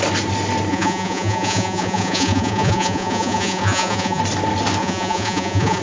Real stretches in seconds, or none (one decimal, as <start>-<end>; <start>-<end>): 0.0-0.7; 4.2-4.8